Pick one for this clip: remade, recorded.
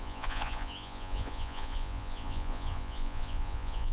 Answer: remade